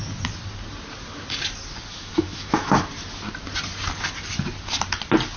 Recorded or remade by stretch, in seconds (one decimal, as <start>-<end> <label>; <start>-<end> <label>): 0.0-2.0 recorded; 2.0-2.8 remade; 2.8-5.4 recorded